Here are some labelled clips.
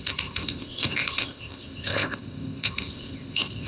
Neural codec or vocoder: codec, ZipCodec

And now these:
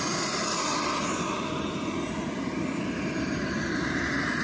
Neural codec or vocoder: none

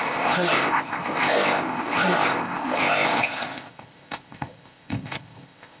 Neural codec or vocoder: codec, ZipCodec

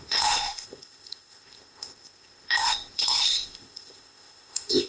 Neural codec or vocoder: codec, ZipCodec